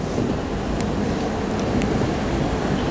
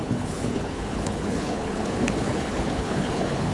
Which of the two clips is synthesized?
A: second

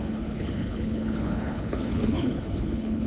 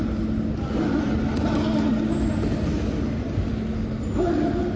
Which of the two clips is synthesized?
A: first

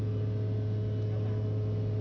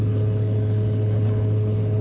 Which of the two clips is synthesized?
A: second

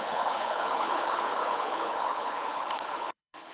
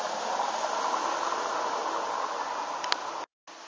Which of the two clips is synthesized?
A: first